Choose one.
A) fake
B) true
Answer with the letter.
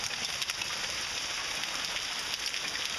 B